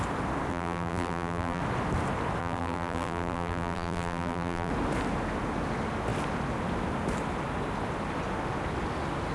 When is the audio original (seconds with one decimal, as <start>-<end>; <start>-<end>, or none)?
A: 0.0-0.5; 1.6-2.4; 4.7-9.3